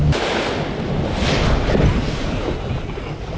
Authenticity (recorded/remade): recorded